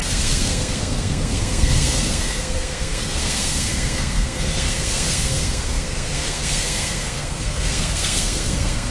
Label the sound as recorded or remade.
remade